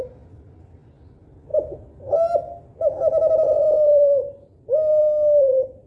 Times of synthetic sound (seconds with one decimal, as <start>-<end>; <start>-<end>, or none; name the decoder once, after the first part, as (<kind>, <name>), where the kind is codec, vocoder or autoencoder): none